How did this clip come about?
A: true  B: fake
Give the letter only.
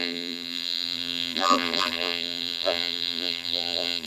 B